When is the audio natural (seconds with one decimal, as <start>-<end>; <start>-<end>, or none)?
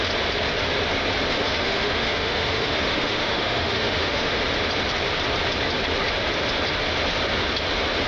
0.0-1.3; 4.4-8.1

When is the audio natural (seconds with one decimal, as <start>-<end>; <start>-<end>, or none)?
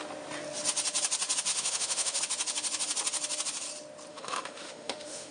0.0-1.5; 2.2-4.1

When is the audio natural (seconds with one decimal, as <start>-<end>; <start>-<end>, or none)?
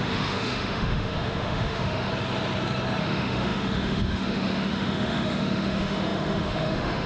2.1-3.0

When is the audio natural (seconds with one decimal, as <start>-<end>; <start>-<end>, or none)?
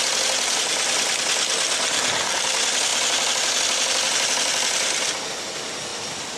0.0-6.4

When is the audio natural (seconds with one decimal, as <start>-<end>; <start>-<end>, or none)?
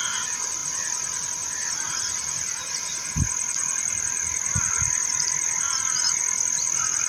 0.0-7.1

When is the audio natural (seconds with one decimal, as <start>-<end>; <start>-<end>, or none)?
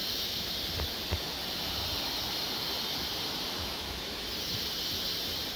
0.5-3.6; 4.2-5.6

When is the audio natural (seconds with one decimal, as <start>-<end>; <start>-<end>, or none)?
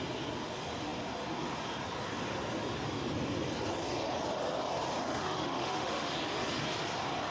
0.0-5.2; 6.1-7.3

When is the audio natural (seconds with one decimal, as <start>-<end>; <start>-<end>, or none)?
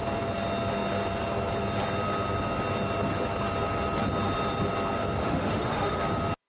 0.0-5.2; 6.0-6.5